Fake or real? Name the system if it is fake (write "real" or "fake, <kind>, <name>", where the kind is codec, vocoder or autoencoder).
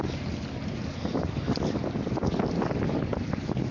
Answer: real